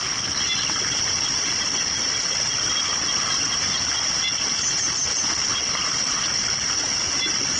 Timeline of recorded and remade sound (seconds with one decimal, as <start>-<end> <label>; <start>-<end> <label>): 0.0-7.6 recorded

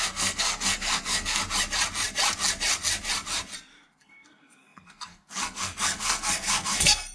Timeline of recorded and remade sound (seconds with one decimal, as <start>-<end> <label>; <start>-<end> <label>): 0.0-1.4 remade; 1.4-4.0 recorded; 4.0-7.1 remade

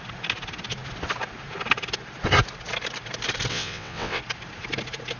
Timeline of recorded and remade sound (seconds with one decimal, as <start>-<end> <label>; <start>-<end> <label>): 0.0-3.5 recorded; 3.5-4.2 remade; 4.2-5.2 recorded

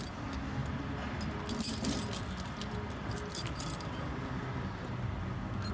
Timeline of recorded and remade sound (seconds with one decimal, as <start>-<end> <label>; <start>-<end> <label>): 0.0-5.7 recorded

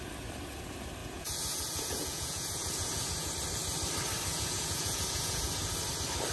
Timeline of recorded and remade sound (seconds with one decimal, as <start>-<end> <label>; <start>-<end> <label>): 0.0-1.0 recorded; 1.0-3.3 remade; 3.3-4.3 recorded; 4.3-5.7 remade; 5.7-6.3 recorded